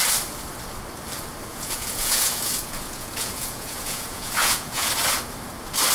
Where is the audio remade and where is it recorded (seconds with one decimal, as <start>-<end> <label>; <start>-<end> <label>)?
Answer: 0.0-1.5 recorded; 1.5-4.9 remade; 4.9-5.9 recorded